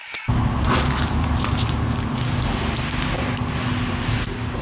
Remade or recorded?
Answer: recorded